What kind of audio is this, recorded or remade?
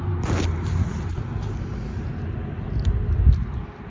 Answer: recorded